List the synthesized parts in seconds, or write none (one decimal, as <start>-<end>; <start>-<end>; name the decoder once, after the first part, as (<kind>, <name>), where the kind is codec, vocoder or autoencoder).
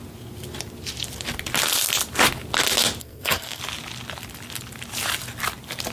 3.0-3.6 (codec, SNAC)